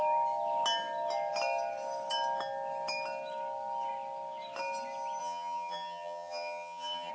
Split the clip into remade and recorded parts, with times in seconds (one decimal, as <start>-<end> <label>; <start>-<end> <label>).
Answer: 0.0-5.2 recorded; 5.2-7.1 remade